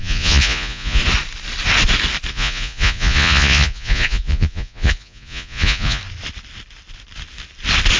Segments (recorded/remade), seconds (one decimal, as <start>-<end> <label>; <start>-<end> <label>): 0.0-1.0 remade; 1.0-2.3 recorded; 2.3-6.0 remade; 6.0-8.0 recorded